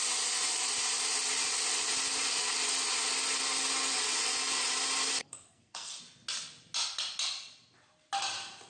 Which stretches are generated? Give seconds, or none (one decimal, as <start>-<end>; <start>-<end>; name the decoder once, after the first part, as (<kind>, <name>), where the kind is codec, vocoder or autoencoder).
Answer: 5.2-6.0 (codec, SNAC)